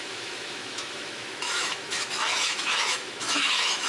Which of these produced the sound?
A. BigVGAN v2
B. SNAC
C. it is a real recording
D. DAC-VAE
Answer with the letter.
D